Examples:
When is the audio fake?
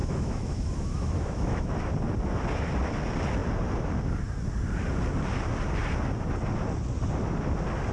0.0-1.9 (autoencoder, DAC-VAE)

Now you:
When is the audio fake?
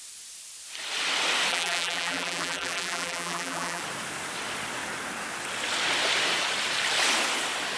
1.5-3.8 (vocoder, BigVGAN v2)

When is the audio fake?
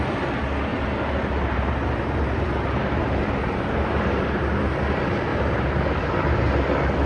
0.7-4.0 (vocoder, BigVGAN v2); 5.3-6.0